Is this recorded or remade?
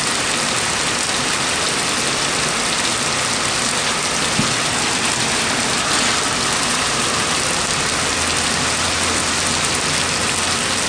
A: recorded